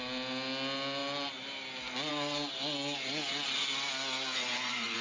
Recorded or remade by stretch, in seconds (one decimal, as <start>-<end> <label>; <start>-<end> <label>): 0.0-5.0 recorded